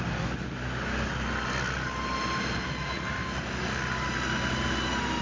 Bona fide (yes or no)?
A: yes